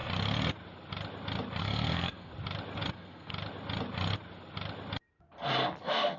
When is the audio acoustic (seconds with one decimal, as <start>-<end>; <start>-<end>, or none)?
0.0-1.6; 2.3-2.9; 3.3-5.8